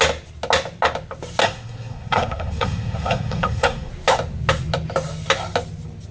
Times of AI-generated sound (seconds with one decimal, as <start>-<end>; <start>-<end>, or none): 1.4-3.9